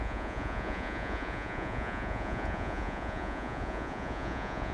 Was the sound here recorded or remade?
remade